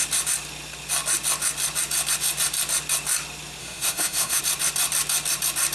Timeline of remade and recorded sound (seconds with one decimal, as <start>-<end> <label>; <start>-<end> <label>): 0.0-3.6 recorded; 3.6-4.4 remade; 4.4-5.7 recorded